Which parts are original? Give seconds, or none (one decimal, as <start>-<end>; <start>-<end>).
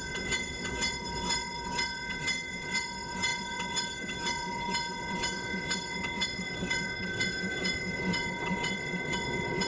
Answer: none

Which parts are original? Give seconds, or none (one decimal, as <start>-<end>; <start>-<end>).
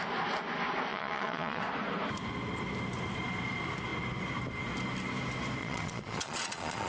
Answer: 0.0-0.9; 1.6-5.6